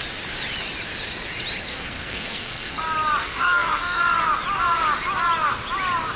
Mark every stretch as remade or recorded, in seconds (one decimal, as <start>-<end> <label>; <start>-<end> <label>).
0.0-1.7 recorded; 1.7-2.8 remade; 2.8-3.2 recorded; 3.2-4.0 remade; 4.0-6.2 recorded